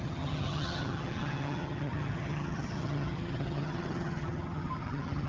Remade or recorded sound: remade